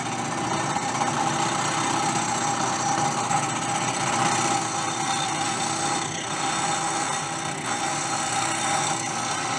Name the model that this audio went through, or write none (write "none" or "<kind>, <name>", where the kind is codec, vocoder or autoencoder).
none